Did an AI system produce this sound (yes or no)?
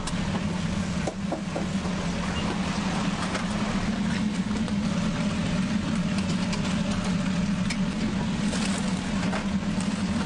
no